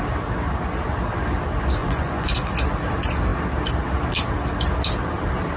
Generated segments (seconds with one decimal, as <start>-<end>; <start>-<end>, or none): 1.8-2.3